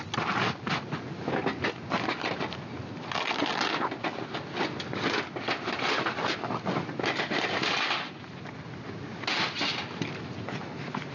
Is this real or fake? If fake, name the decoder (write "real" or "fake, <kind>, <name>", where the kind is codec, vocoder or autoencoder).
real